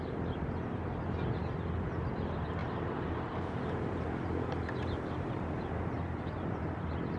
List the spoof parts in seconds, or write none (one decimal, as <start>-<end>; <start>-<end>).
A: 2.6-7.2